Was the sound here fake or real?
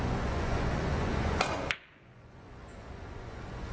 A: fake